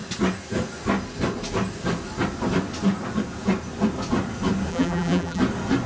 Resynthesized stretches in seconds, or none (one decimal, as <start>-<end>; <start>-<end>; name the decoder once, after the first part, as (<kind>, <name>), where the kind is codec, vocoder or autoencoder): 4.7-5.4 (vocoder, BigVGAN v2)